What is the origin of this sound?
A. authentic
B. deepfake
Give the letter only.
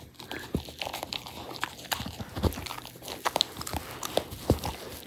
A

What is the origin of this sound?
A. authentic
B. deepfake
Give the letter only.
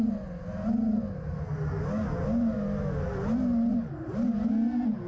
A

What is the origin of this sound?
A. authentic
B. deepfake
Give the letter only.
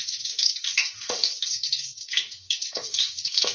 B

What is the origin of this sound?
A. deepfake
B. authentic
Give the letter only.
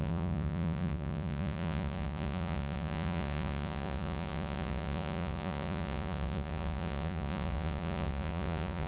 A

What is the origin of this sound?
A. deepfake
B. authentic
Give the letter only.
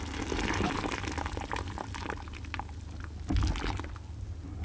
B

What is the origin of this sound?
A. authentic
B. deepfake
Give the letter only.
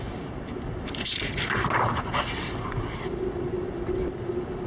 A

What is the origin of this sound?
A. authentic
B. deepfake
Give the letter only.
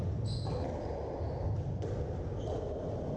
A